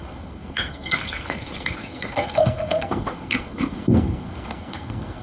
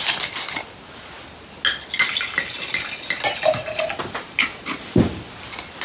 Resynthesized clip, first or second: first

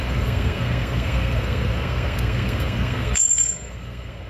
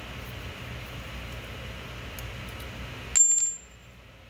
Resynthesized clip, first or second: first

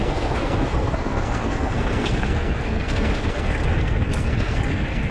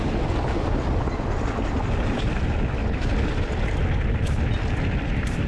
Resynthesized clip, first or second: first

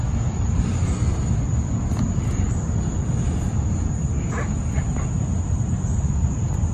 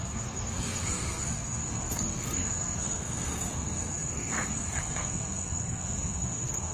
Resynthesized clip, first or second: second